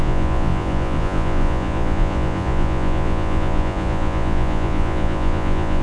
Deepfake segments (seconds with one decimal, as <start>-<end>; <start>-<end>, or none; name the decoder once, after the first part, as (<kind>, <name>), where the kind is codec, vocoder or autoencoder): 0.0-5.8 (vocoder, Vocos)

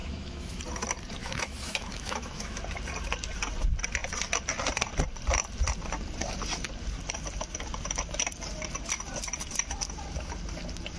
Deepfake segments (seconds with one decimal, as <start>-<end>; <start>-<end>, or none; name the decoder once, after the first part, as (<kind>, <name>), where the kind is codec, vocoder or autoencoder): 0.0-0.6 (autoencoder, DAC-VAE); 1.2-2.6

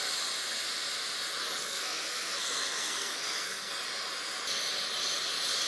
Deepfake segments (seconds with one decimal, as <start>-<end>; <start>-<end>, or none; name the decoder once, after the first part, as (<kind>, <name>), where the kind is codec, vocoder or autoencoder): 1.6-3.7 (codec, SNAC)

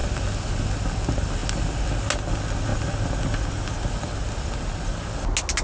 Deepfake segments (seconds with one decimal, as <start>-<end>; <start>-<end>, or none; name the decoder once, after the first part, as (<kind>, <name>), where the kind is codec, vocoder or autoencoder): none

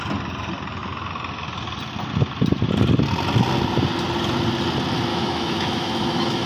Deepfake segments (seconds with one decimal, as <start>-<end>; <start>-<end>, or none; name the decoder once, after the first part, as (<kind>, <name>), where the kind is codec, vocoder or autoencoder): 5.1-6.5 (autoencoder, DAC-VAE)